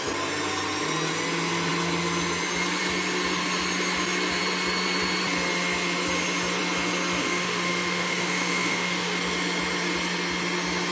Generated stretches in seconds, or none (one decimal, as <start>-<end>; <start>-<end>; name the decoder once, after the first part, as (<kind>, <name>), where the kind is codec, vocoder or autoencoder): 7.2-9.2 (autoencoder, DAC-VAE)